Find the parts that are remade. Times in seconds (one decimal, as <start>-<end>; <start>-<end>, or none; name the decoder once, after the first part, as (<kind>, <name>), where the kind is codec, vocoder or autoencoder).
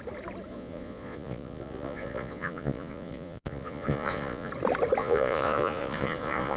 0.5-4.5 (vocoder, Vocos); 5.0-6.6